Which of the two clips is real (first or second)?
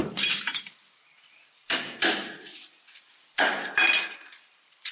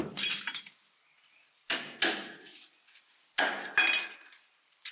second